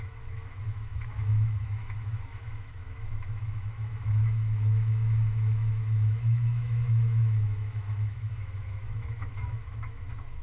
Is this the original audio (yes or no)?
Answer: no